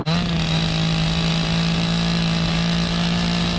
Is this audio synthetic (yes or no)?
no